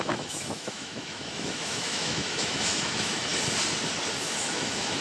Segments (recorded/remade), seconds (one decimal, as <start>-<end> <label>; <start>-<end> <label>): 0.0-3.3 remade; 3.3-4.2 recorded; 4.2-5.0 remade